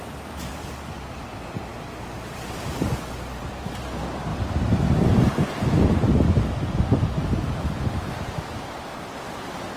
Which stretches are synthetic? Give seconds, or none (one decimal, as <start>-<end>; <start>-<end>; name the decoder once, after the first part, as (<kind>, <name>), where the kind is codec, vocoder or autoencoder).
none